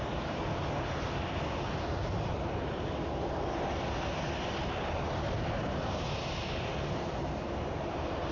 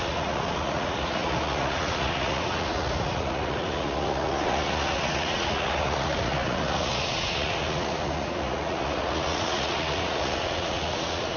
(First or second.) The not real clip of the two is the second